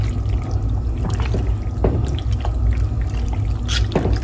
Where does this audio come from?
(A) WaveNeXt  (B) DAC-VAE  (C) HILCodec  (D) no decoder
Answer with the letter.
D